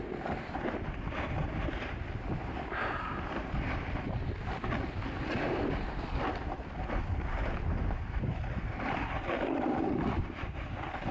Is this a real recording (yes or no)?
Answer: yes